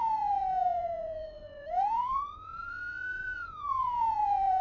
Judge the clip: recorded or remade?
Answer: remade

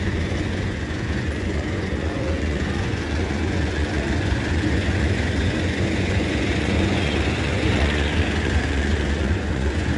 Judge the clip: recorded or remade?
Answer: remade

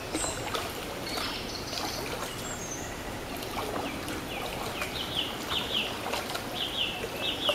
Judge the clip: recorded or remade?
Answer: recorded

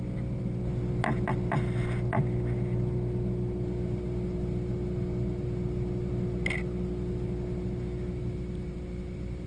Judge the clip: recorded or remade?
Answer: recorded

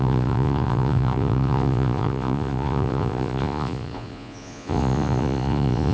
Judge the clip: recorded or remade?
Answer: remade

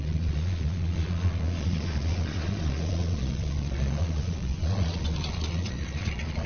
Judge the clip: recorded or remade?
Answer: remade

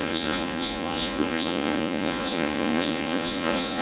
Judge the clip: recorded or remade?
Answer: remade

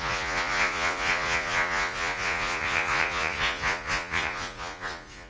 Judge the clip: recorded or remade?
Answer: remade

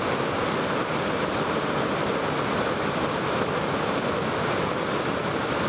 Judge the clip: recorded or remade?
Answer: recorded